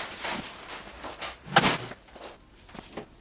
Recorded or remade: recorded